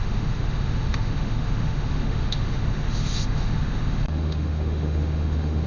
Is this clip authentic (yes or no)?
no